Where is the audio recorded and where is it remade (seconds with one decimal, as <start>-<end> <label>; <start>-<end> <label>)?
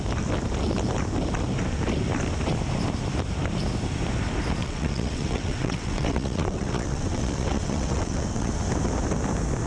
0.0-4.6 recorded; 4.6-8.5 remade; 8.5-9.7 recorded